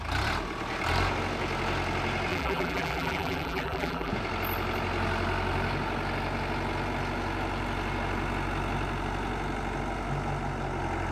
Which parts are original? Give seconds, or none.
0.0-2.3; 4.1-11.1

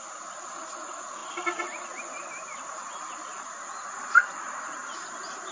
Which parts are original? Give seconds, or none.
0.0-4.8

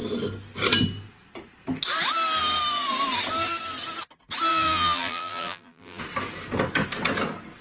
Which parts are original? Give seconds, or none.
0.0-4.5; 6.0-7.6

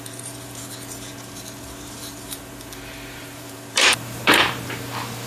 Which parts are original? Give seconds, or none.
none

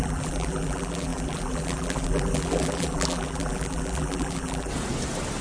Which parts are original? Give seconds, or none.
4.7-5.4

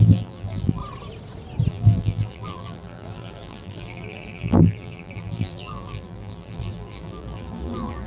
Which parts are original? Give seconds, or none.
0.8-1.7

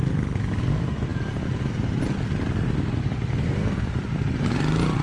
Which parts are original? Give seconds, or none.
0.0-5.0

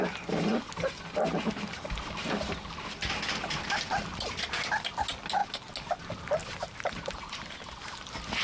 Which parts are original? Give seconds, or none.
0.0-6.4; 7.7-8.4